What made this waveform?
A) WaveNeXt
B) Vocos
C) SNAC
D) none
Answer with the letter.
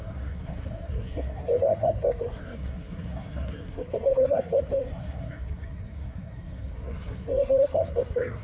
C